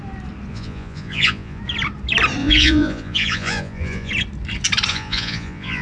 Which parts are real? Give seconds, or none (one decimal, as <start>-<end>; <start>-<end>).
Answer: 0.0-0.5; 1.6-2.4; 4.1-4.9